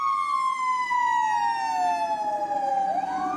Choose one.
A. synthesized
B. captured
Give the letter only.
B